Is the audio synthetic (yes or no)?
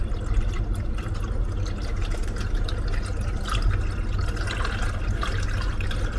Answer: no